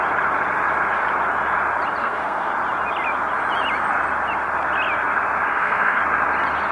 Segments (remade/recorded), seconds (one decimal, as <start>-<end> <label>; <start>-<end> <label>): 0.0-2.0 recorded; 2.0-2.5 remade; 2.5-5.5 recorded; 5.5-6.0 remade; 6.0-6.7 recorded